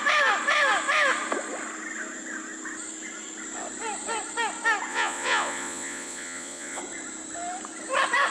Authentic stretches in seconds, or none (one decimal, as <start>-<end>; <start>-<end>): 0.0-4.9; 6.8-8.3